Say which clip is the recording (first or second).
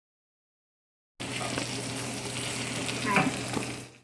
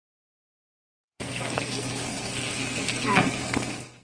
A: first